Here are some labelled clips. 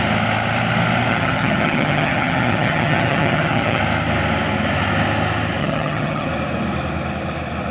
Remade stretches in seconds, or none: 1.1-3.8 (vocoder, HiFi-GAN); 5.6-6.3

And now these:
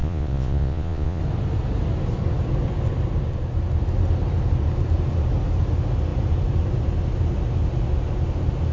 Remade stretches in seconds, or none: 0.0-1.2 (vocoder, Vocos)

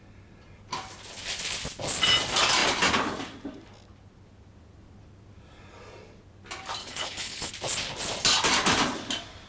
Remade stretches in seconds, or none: 6.8-7.5 (codec, HILCodec)